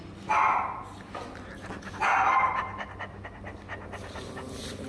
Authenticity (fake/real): real